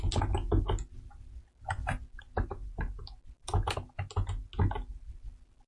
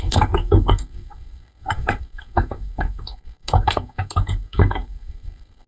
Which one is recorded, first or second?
first